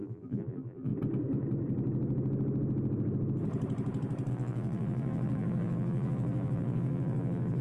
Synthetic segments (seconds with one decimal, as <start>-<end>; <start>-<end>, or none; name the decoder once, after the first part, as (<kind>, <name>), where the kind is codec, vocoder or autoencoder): 0.0-0.9 (vocoder, BigVGAN v2); 4.3-7.6